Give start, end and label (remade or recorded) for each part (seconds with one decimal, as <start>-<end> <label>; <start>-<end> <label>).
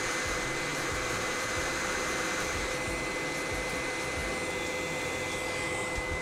0.0-0.7 recorded; 0.7-2.9 remade; 2.9-6.2 recorded